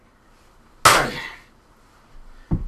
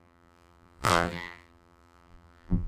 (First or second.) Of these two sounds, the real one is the first